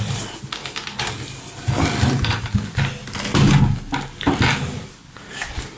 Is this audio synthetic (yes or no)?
no